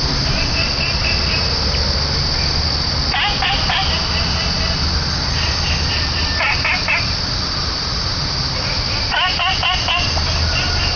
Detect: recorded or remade recorded